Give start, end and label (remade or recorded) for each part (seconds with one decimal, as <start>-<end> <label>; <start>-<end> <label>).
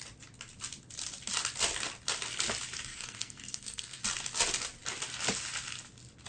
0.0-2.9 recorded; 2.9-4.0 remade; 4.0-6.3 recorded